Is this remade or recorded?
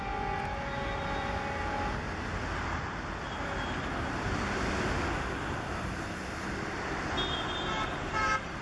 recorded